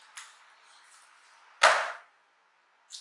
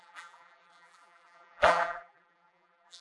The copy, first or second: second